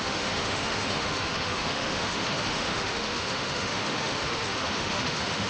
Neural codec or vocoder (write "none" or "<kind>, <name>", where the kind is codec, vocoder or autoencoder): autoencoder, DAC-VAE